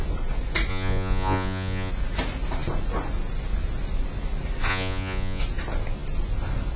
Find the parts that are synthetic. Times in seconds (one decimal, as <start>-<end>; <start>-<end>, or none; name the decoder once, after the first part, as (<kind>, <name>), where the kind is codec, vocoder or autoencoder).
0.7-1.9 (vocoder, Vocos); 4.7-5.4